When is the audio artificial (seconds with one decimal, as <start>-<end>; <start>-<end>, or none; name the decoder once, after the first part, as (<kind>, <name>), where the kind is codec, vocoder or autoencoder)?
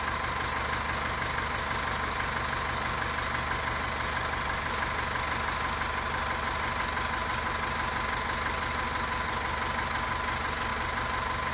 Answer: none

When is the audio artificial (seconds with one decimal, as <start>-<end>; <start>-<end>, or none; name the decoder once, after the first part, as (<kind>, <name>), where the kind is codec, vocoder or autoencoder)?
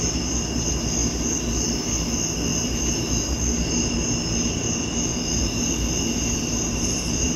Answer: 2.5-3.0 (vocoder, BigVGAN v2); 5.1-7.4